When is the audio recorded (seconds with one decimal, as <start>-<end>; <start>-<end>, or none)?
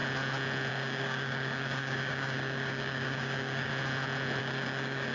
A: 0.0-0.7; 3.7-4.4